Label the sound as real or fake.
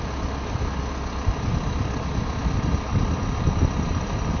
real